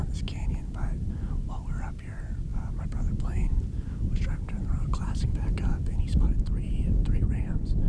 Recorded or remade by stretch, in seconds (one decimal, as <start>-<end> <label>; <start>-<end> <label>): 0.0-2.5 recorded; 2.5-6.2 remade; 6.2-7.9 recorded